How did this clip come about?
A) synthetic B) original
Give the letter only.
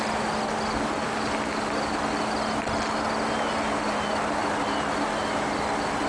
B